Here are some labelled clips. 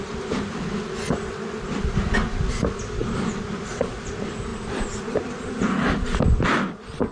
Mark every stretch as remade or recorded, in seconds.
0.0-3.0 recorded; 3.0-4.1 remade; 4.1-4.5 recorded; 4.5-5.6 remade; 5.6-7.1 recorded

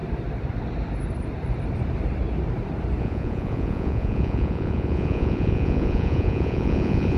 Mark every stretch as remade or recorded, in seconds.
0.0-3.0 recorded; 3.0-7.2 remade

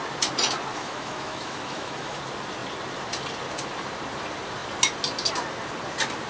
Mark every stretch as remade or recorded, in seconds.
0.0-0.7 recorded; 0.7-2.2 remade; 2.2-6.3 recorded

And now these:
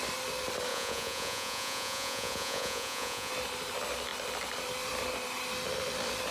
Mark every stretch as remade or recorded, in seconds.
0.0-0.7 recorded; 0.7-3.3 remade; 3.3-6.3 recorded

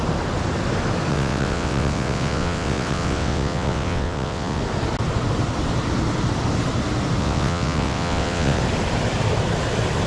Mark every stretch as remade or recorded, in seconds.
0.0-1.1 recorded; 1.1-4.6 remade; 4.6-7.2 recorded; 7.2-8.6 remade; 8.6-10.1 recorded

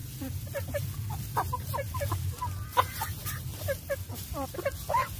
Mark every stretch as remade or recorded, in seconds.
0.0-5.2 remade